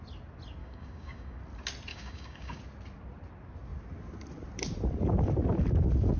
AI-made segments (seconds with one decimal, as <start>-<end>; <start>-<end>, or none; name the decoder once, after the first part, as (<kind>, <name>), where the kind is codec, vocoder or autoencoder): 0.6-1.4 (codec, DAC); 1.9-2.6